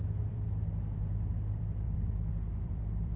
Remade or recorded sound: remade